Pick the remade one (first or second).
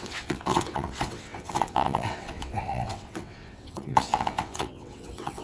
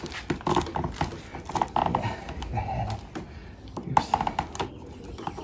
first